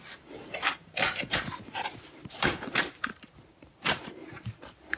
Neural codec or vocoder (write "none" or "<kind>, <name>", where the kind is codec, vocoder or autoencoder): vocoder, BigVGAN v2